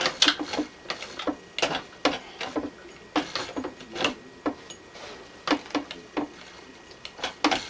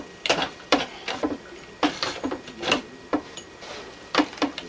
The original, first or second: first